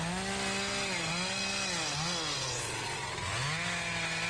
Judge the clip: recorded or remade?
recorded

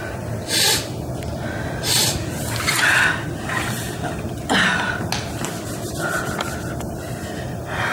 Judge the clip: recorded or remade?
recorded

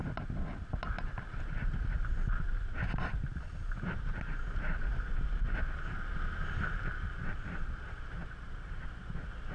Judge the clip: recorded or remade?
recorded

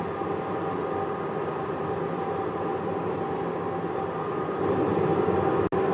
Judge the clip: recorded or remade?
recorded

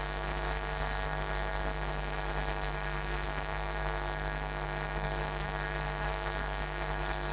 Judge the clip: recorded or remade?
remade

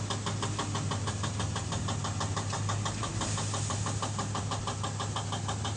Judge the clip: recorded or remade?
recorded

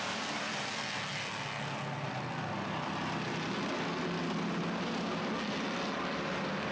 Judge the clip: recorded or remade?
recorded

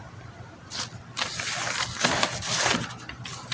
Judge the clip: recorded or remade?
recorded